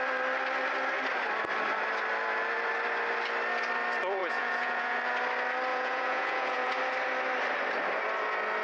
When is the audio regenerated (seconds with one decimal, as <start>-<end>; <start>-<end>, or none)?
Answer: 4.2-4.9; 5.7-6.7